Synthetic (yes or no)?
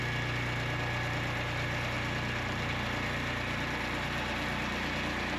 no